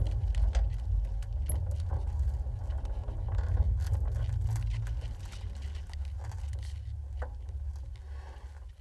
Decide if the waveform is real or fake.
real